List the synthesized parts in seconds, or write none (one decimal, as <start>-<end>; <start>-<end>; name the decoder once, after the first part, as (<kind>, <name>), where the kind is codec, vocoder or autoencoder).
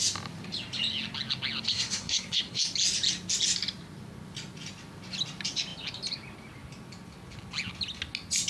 1.7-2.6 (codec, SNAC)